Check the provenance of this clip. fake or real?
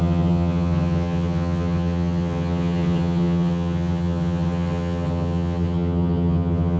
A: fake